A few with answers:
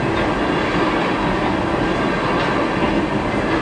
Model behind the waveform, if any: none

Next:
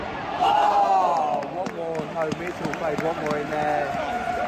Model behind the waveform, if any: none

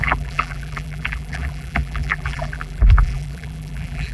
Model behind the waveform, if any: vocoder, BigVGAN v2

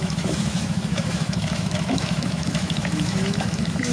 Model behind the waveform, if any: autoencoder, DAC-VAE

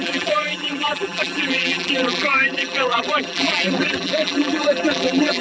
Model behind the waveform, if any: vocoder, BigVGAN v2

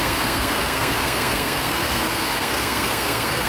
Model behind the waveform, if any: codec, SNAC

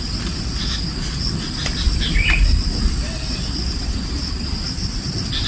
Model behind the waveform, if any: none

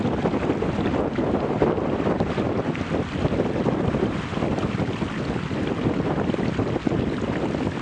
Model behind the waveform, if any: none